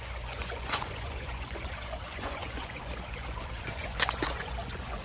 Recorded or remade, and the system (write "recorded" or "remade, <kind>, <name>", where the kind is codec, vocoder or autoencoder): remade, vocoder, Vocos